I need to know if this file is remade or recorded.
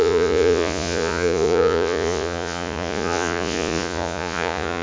remade